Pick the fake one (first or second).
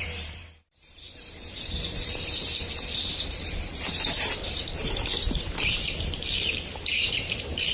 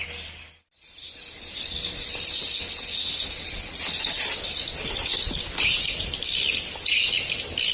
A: first